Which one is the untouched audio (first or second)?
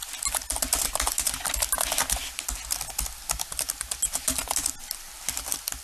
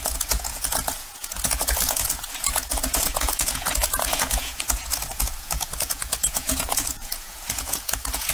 first